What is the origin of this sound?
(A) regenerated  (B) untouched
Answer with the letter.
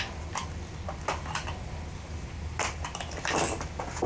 B